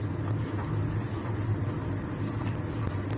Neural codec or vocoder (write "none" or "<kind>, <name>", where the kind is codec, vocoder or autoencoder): none